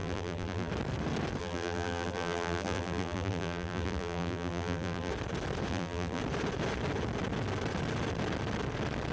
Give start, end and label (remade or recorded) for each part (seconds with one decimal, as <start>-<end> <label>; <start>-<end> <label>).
0.0-0.7 remade; 0.7-1.4 recorded; 1.4-5.1 remade; 5.1-5.7 recorded; 5.7-6.2 remade; 6.2-9.1 recorded